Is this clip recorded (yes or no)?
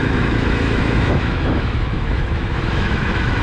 no